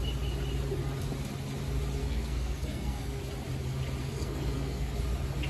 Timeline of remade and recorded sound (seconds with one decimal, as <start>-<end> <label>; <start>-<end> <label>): 0.0-2.0 recorded; 2.0-3.2 remade; 3.2-4.0 recorded; 4.0-5.0 remade; 5.0-5.5 recorded